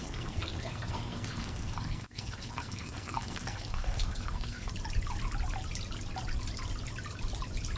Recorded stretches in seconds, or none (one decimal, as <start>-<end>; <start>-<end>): 4.7-7.8